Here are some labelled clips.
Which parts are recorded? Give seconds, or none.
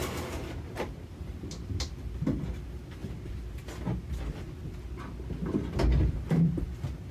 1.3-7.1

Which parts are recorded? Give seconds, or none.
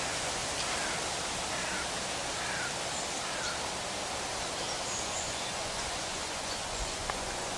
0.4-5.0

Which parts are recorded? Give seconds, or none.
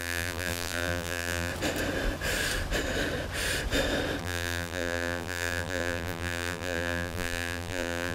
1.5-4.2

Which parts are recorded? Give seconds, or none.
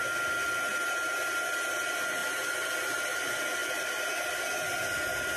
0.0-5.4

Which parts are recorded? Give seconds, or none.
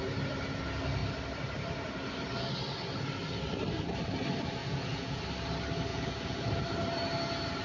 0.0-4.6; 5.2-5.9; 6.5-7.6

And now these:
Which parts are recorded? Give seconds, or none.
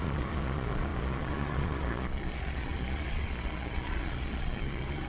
none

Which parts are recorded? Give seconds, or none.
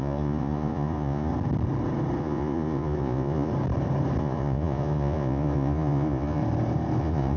1.3-2.2; 3.5-4.2; 6.4-7.0